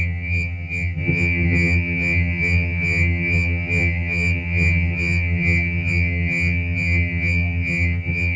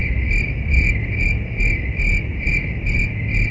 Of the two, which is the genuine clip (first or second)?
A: second